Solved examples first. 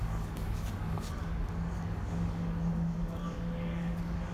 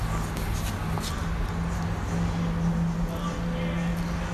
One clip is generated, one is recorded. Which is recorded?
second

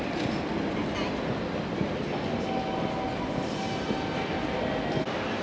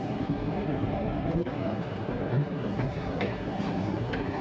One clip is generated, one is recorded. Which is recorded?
first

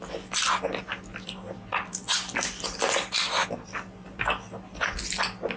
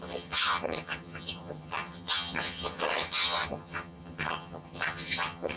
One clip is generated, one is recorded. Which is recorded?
first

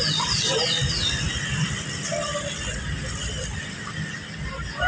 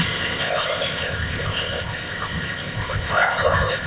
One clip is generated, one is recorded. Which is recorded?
first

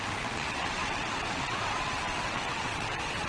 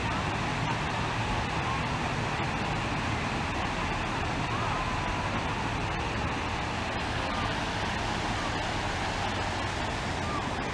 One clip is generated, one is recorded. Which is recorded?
second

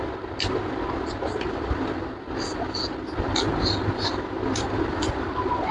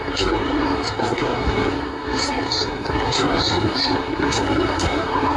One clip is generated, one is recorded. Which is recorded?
first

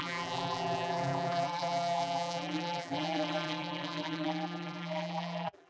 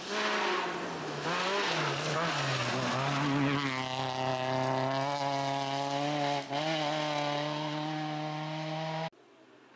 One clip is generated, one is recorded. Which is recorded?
second